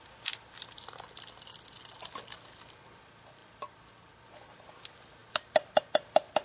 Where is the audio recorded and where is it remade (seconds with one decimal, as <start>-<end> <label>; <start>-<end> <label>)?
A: 0.0-6.4 recorded